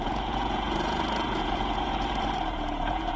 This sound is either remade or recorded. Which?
remade